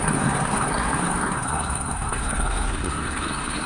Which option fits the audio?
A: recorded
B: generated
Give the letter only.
B